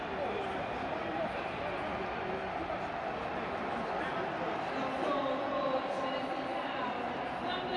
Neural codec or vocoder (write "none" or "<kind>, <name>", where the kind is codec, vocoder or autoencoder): none